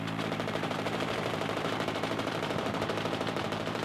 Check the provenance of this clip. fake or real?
fake